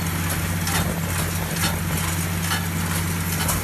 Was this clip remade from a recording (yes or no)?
no